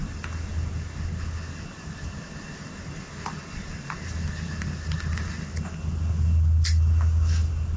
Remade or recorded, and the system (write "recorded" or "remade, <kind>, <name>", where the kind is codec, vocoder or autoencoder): recorded